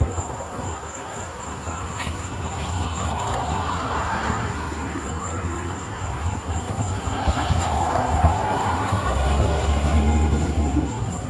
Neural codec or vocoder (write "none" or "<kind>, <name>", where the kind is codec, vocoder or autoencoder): codec, SNAC